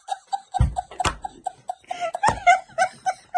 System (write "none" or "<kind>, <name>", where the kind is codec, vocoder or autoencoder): vocoder, BigVGAN v2